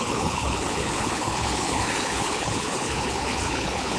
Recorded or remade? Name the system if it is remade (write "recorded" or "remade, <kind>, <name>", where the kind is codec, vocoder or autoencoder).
remade, codec, HILCodec